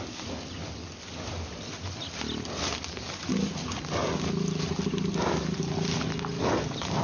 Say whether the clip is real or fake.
real